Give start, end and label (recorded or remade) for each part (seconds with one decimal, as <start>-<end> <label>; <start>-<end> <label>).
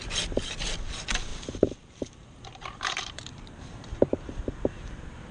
0.0-1.3 recorded; 1.3-4.4 remade; 4.4-5.3 recorded